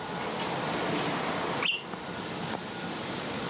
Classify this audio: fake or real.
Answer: real